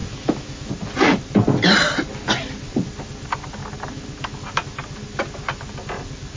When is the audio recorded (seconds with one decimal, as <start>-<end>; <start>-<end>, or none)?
0.7-6.4